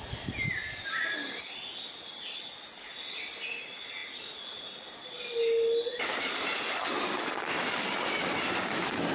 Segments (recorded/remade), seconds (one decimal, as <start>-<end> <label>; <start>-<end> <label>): 0.0-9.1 recorded